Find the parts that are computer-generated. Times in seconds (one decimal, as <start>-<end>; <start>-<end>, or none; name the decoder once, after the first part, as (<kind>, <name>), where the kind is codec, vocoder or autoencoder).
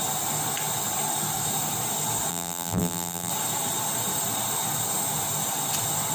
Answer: 2.3-3.3 (vocoder, BigVGAN v2)